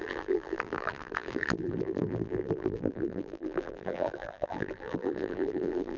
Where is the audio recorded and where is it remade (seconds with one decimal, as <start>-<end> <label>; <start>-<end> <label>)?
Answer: 0.0-6.0 remade